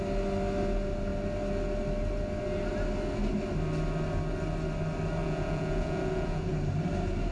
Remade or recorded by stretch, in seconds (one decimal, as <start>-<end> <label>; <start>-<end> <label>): 0.0-5.2 recorded; 5.2-6.5 remade; 6.5-7.3 recorded